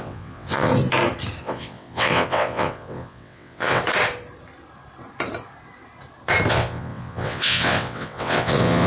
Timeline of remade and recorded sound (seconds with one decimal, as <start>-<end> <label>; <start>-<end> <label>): 0.0-0.7 remade; 0.7-1.4 recorded; 1.4-3.8 remade; 3.8-6.5 recorded; 6.5-8.9 remade